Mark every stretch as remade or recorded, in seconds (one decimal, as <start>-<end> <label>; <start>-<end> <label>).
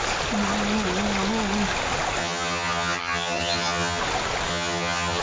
0.0-2.2 recorded; 2.2-4.0 remade; 4.0-4.5 recorded; 4.5-5.2 remade